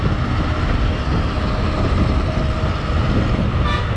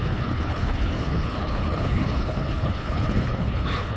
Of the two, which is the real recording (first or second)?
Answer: first